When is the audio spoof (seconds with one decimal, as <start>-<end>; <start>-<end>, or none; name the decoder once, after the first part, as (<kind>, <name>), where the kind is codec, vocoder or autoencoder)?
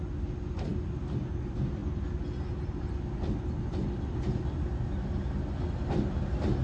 none